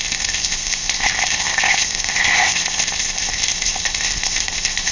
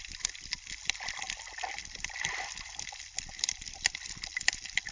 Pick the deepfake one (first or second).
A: first